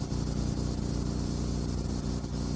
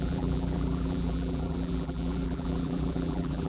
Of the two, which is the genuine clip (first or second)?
first